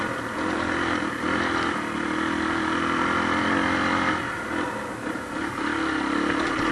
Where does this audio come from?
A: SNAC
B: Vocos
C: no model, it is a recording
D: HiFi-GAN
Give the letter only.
C